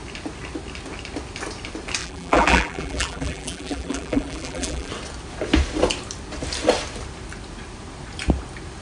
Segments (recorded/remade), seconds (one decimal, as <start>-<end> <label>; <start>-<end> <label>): 0.0-2.0 recorded; 2.0-4.9 remade; 4.9-8.8 recorded